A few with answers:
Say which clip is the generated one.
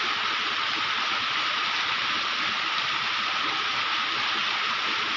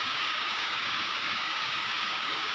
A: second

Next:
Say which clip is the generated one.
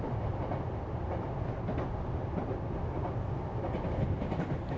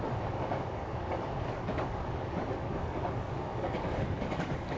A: second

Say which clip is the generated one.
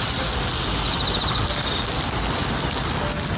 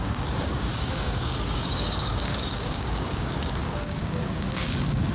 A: second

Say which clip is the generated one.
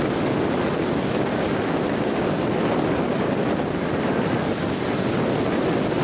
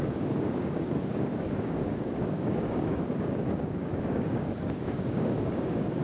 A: second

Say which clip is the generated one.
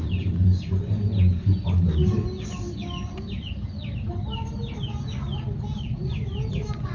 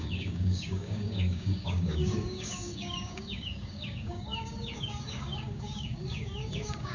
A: second